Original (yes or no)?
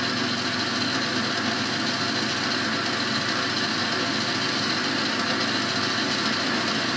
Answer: yes